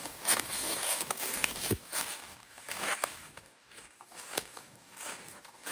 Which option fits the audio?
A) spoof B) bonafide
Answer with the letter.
A